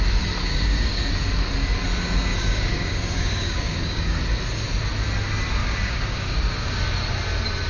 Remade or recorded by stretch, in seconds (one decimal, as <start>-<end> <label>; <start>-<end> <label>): 0.0-0.4 recorded; 0.4-1.0 remade; 1.0-2.3 recorded; 2.3-4.2 remade; 4.2-5.6 recorded; 5.6-6.7 remade; 6.7-7.7 recorded